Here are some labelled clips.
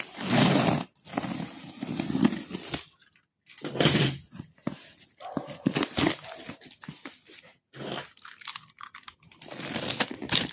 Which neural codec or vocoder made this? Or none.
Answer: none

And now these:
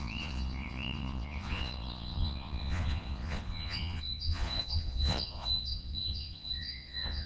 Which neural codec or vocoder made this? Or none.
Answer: vocoder, Vocos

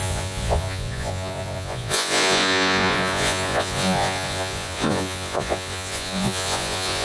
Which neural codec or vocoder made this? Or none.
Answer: vocoder, Vocos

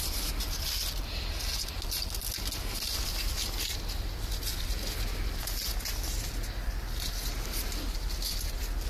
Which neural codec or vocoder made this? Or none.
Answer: none